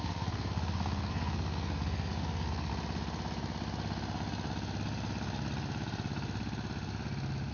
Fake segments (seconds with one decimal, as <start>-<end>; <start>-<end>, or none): 0.0-2.7